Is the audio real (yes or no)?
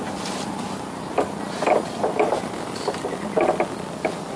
yes